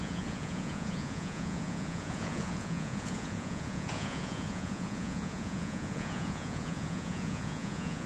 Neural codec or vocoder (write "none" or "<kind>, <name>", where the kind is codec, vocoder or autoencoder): vocoder, Vocos